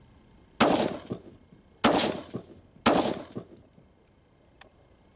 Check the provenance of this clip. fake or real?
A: real